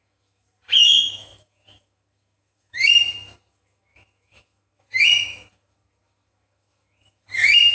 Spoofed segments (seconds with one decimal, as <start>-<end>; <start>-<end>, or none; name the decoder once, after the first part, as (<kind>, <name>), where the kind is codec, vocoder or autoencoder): 0.0-7.7 (autoencoder, DAC-VAE)